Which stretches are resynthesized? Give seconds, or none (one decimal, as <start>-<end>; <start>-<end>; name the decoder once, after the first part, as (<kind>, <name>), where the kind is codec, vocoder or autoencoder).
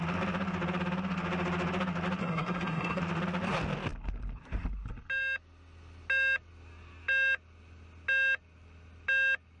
2.2-3.0 (codec, SNAC)